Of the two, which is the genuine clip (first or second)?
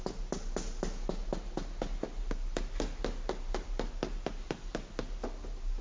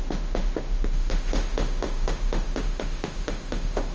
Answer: first